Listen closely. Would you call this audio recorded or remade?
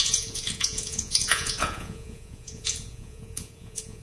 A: remade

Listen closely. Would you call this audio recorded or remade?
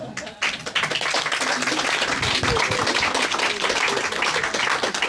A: recorded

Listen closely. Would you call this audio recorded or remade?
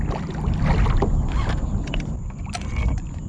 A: recorded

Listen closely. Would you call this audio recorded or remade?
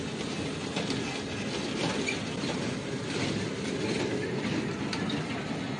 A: recorded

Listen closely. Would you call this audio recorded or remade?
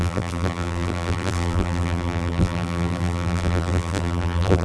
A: remade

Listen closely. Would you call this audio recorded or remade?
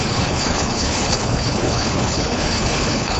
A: remade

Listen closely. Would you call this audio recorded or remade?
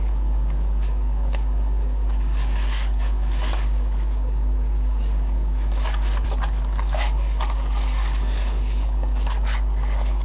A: remade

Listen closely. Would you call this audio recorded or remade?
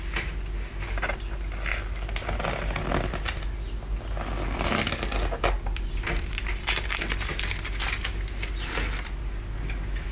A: recorded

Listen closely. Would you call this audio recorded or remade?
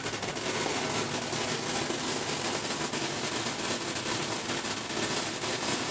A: recorded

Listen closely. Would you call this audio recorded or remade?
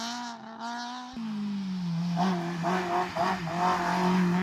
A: recorded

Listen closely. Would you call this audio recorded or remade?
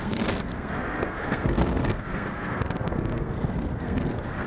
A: remade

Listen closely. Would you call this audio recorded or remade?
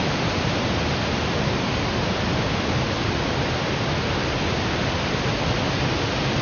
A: recorded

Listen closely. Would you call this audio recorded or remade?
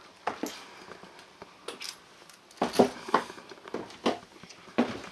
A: recorded